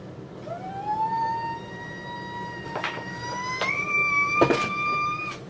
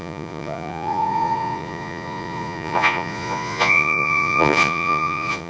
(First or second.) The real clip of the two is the first